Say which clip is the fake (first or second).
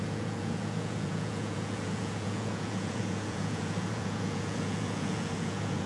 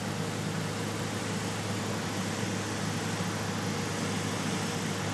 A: first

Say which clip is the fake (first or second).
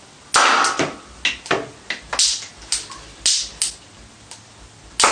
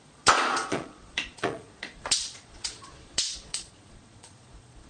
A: second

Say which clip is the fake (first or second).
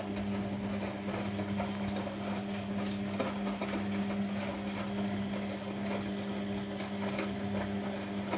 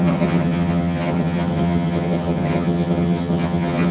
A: second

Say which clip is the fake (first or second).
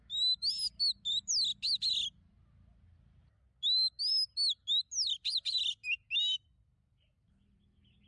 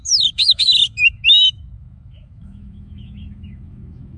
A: second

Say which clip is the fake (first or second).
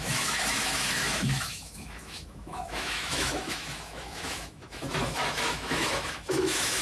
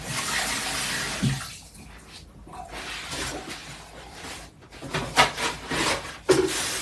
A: first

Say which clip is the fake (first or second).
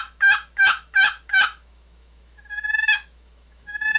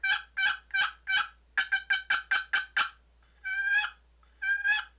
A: first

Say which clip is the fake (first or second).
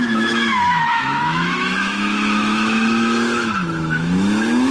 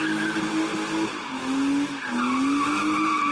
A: first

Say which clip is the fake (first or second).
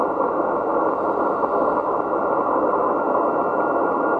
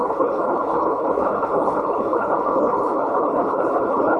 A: second